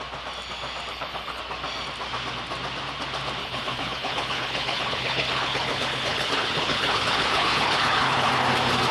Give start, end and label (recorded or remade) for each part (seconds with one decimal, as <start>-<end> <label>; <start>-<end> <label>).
0.0-0.9 recorded; 0.9-1.4 remade; 1.4-3.4 recorded; 3.4-8.3 remade; 8.3-8.9 recorded